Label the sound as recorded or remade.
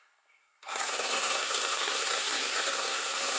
remade